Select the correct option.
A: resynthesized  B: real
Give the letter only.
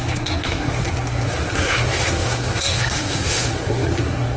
A